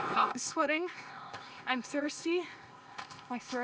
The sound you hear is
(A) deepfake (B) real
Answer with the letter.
A